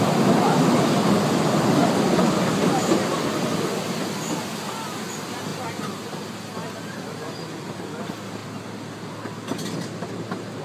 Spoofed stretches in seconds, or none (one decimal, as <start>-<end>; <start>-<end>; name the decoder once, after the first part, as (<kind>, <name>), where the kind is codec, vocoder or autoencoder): 1.8-3.7 (vocoder, BigVGAN v2)